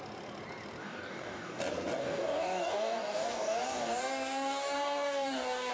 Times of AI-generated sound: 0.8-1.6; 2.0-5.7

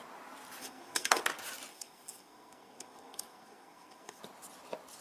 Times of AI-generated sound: 0.6-1.2; 1.7-4.2

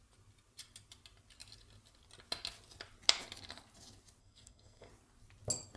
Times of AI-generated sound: 4.2-4.9

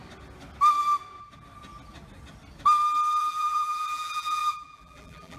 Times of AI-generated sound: 3.2-5.4

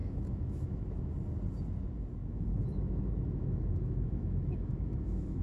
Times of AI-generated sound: 0.0-1.1; 2.2-5.4

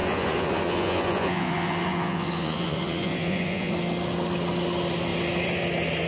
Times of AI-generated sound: 0.0-3.7

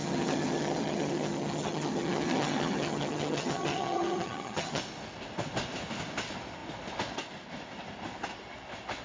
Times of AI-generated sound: 0.0-4.8